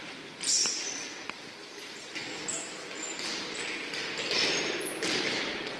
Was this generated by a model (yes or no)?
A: no